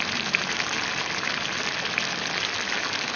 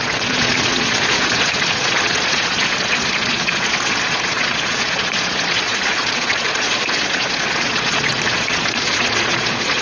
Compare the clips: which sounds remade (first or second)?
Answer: second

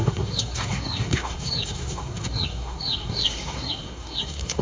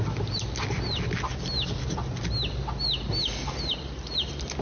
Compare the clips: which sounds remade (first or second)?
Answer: first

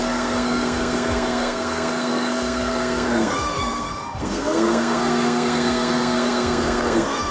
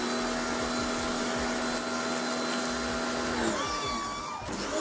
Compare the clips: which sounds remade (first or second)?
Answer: first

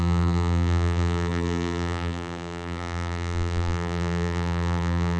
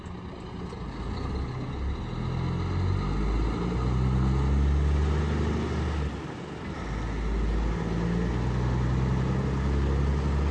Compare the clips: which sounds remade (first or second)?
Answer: first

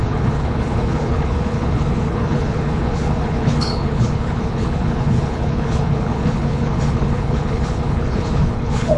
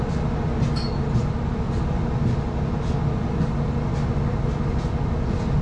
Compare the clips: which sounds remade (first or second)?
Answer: first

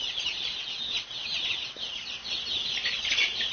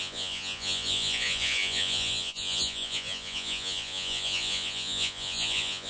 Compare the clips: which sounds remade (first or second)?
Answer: second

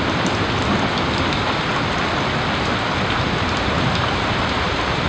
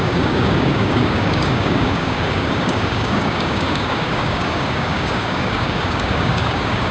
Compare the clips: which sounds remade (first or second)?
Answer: second